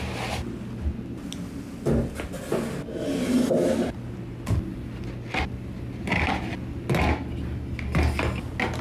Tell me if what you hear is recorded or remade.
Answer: recorded